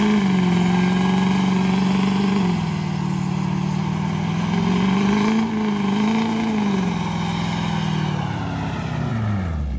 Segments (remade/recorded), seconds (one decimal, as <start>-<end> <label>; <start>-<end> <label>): 0.0-9.8 recorded